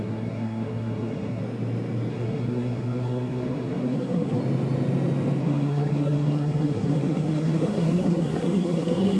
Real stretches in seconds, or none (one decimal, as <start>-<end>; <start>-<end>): 1.4-2.1; 4.4-5.4